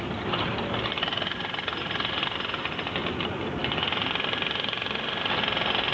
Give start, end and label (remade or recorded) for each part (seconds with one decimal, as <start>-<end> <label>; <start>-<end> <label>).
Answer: 0.0-5.9 recorded